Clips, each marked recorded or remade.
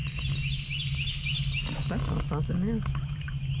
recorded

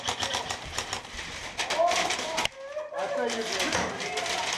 recorded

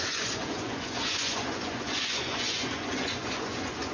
remade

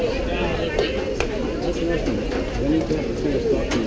recorded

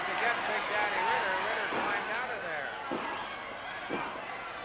recorded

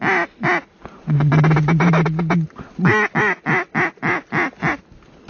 recorded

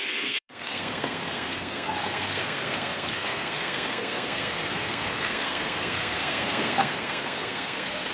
remade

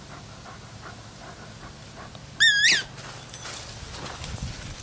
recorded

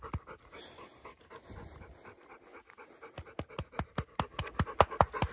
recorded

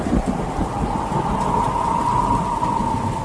recorded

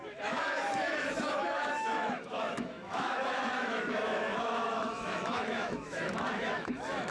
remade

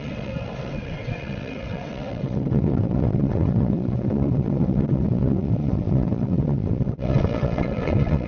remade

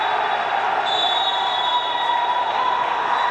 recorded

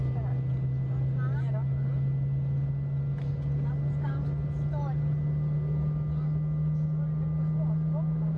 recorded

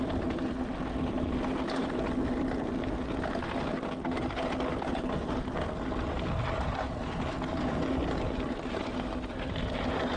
recorded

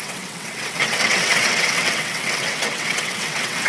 remade